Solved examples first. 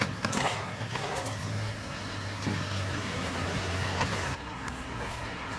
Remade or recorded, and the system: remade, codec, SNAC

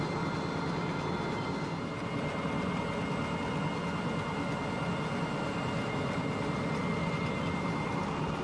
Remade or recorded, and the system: recorded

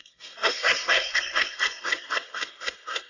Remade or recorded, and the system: remade, codec, SNAC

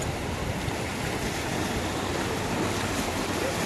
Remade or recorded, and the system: recorded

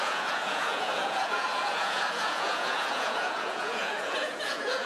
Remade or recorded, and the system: remade, vocoder, Vocos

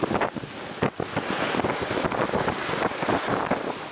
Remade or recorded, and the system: recorded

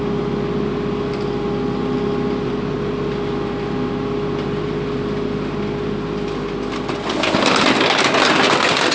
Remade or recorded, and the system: recorded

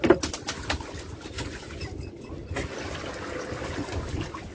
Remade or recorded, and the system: recorded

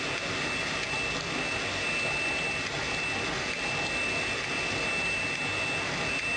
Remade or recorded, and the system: recorded